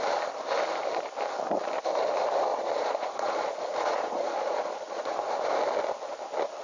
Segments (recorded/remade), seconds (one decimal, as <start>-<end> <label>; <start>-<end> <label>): 0.0-2.5 recorded; 2.5-5.2 remade; 5.2-6.6 recorded